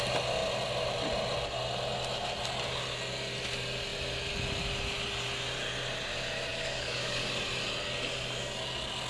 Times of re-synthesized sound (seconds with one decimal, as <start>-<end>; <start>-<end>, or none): 6.5-7.3